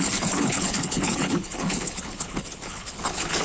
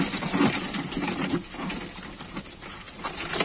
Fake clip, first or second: first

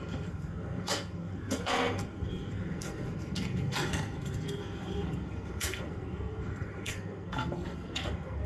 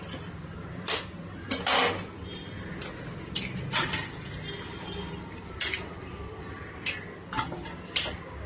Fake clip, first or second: first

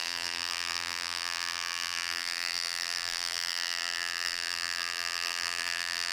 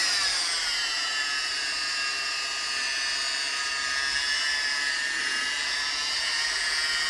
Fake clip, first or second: first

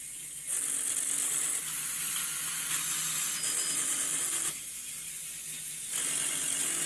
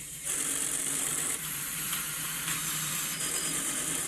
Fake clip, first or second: second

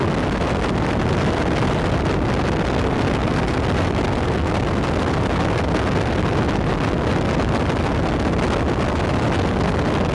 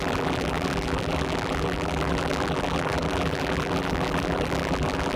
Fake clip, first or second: second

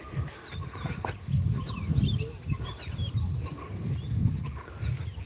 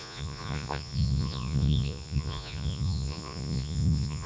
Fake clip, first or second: second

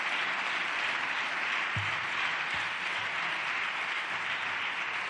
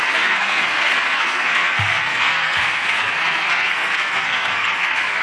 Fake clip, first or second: second